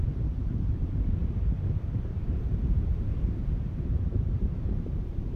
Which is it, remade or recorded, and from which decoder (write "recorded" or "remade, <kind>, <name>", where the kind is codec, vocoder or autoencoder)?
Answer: remade, vocoder, BigVGAN v2